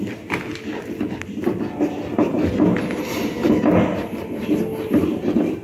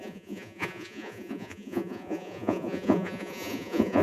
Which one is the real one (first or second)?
first